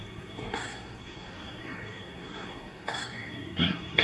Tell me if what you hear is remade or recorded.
remade